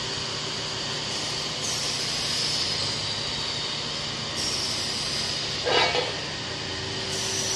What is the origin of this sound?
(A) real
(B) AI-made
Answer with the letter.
A